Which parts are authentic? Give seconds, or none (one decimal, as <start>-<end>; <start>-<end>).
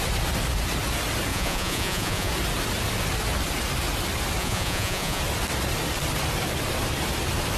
0.0-1.3; 2.3-4.4; 5.2-7.6